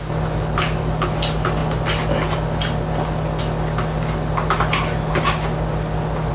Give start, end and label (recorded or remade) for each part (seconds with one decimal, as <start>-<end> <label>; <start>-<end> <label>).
0.0-6.3 recorded